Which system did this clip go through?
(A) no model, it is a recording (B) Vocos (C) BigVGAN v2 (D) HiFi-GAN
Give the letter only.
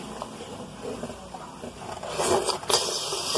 A